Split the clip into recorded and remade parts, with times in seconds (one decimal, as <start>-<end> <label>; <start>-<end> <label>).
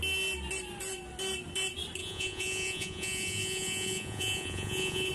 0.0-2.0 recorded; 2.0-5.1 remade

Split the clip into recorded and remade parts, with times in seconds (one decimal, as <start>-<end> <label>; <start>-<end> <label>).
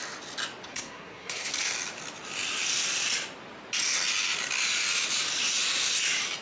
0.0-0.7 recorded; 0.7-1.5 remade; 1.5-6.4 recorded